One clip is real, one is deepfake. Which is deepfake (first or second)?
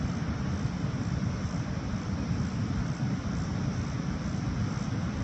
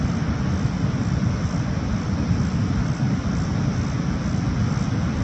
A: first